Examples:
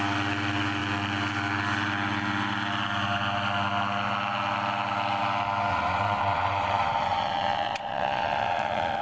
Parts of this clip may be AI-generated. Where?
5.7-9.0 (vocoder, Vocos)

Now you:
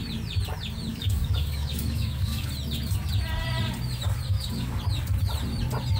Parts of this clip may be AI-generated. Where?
0.9-2.5 (codec, DAC); 4.3-4.8

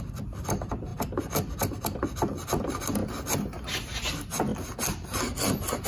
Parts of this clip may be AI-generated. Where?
none

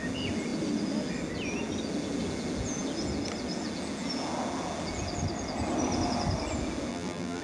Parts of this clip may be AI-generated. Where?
6.9-7.4 (vocoder, BigVGAN v2)

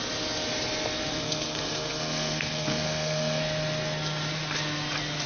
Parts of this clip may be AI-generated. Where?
1.1-3.4 (codec, SNAC)

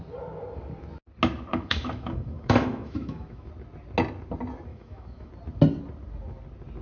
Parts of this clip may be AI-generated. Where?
1.5-3.5 (autoencoder, DAC-VAE); 4.7-5.3

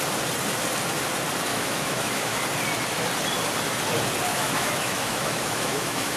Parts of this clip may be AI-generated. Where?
1.5-2.4 (autoencoder, DAC-VAE); 4.3-6.2